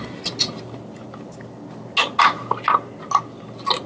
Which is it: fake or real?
real